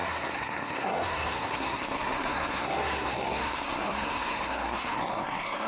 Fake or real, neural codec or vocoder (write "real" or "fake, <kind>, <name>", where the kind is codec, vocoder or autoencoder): fake, codec, SNAC